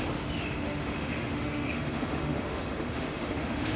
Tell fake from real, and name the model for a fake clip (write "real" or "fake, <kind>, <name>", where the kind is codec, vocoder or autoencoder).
fake, autoencoder, DAC-VAE